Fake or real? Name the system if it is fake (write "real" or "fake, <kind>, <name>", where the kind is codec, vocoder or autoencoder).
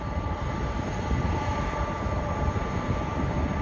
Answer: real